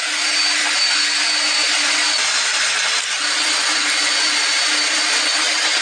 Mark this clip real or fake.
real